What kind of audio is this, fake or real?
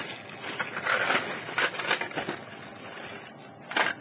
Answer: real